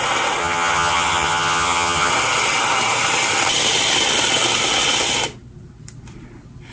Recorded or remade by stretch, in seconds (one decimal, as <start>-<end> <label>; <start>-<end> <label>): 0.0-0.4 recorded; 0.4-2.1 remade; 2.1-6.7 recorded